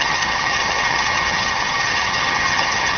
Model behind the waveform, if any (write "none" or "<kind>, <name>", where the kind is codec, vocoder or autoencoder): vocoder, HiFi-GAN